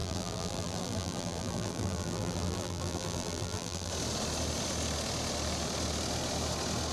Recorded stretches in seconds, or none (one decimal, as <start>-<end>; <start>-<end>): 3.9-6.9